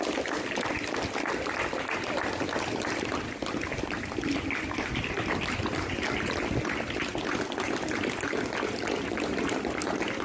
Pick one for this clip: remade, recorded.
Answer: recorded